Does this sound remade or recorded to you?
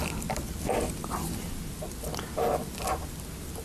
recorded